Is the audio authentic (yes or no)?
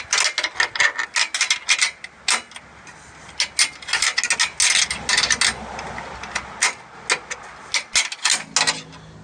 yes